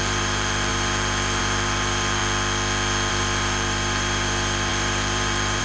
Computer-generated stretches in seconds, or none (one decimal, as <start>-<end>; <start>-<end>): 0.0-2.2; 3.1-5.6